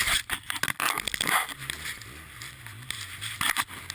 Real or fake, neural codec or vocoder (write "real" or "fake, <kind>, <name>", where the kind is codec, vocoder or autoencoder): real